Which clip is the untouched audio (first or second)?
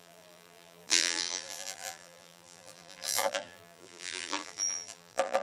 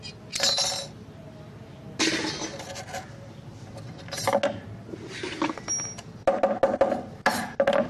second